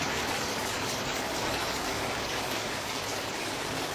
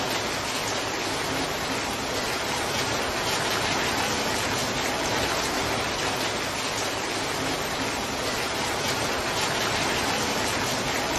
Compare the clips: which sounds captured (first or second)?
second